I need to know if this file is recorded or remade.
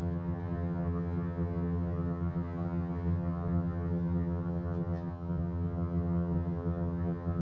remade